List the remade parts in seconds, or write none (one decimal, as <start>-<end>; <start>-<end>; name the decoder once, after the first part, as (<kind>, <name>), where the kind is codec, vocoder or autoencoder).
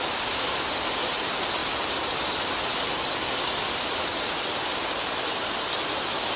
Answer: none